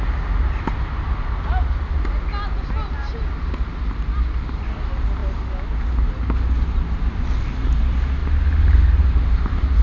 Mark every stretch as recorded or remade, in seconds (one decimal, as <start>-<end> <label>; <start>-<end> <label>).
0.0-9.8 recorded